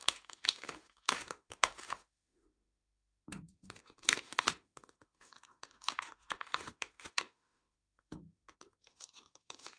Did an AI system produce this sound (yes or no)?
yes